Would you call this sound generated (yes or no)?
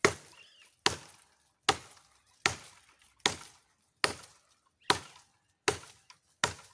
no